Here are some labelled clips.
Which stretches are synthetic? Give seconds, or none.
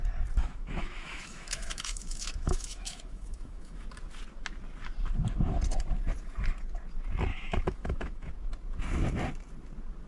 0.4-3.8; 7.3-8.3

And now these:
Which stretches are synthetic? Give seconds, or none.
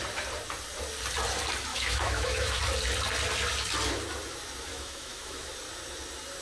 1.7-2.6; 4.7-5.5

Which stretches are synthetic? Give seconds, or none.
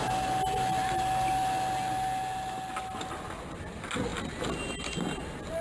none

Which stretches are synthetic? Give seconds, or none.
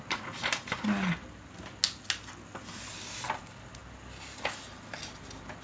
none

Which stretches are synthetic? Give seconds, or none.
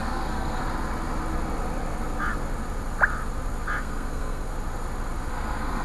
0.0-0.6; 3.8-4.5; 5.3-5.8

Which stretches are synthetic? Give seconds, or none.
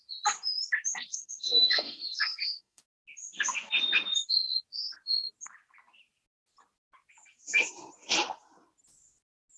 1.1-2.8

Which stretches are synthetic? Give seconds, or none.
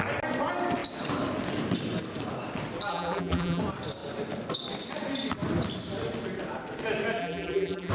2.9-3.6; 7.2-7.9